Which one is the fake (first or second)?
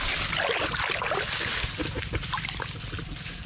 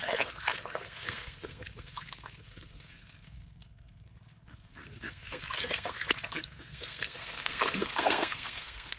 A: second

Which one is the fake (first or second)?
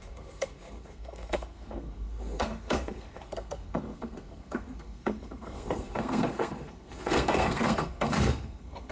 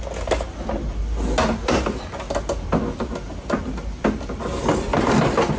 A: first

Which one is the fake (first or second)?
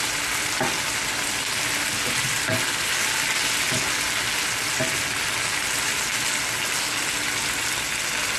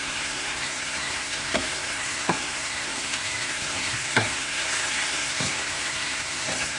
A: second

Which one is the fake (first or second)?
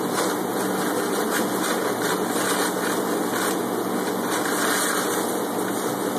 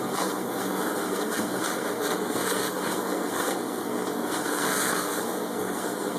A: second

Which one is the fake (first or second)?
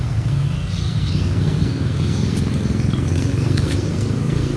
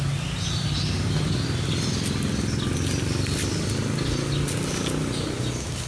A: first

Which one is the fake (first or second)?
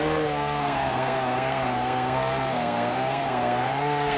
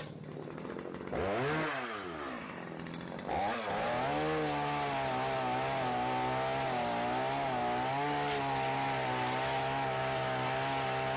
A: first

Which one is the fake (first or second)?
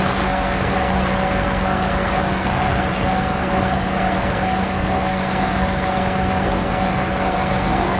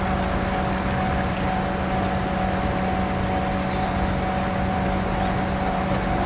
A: first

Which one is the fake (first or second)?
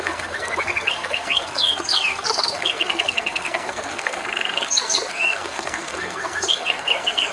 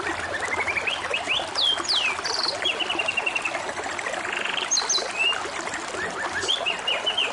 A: first